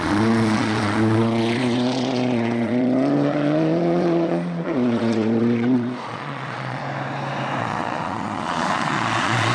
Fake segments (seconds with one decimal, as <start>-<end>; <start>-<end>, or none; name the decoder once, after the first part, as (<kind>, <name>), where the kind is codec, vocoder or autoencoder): 0.0-6.8 (vocoder, Vocos); 7.6-9.5